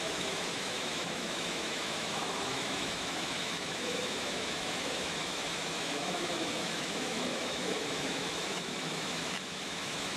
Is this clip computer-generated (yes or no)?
yes